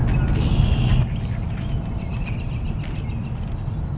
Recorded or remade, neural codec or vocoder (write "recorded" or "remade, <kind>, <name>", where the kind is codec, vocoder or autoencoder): recorded